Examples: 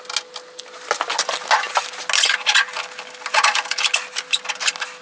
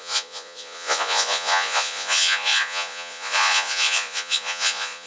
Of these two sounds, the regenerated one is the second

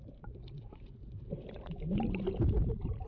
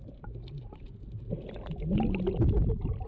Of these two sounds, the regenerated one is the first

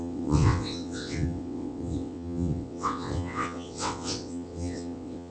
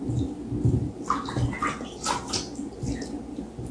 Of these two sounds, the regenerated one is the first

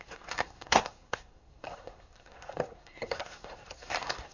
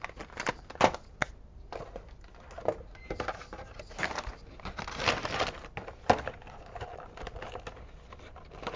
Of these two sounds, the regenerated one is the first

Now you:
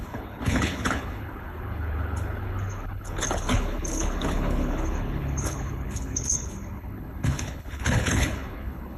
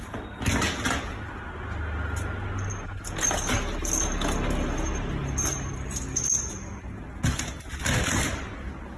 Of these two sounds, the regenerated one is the first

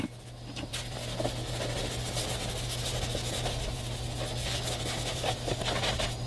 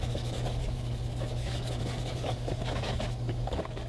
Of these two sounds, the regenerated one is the second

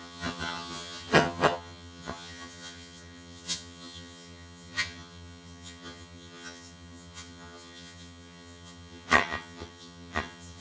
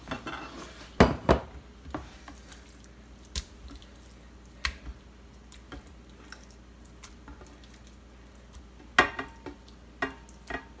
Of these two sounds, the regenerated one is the first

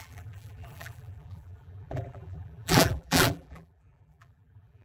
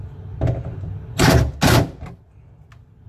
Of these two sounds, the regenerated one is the first